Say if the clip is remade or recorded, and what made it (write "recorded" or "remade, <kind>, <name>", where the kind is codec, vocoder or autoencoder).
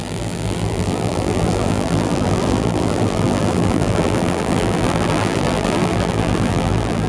remade, vocoder, BigVGAN v2